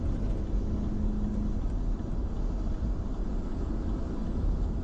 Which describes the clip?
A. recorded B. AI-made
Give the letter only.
A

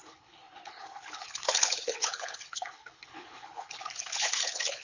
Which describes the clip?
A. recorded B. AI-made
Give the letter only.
B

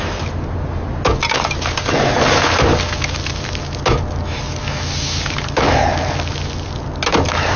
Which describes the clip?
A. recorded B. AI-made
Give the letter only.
A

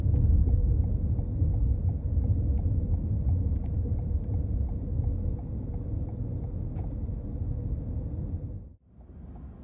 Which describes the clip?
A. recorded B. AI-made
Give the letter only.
A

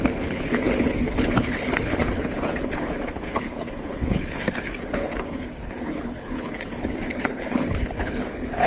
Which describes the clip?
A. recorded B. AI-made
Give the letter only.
B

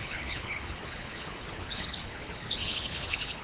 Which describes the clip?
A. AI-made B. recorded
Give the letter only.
A